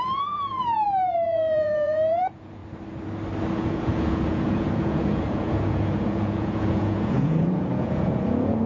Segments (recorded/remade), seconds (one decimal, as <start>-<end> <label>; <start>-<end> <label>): 0.0-2.6 remade; 2.6-3.5 recorded; 3.5-8.7 remade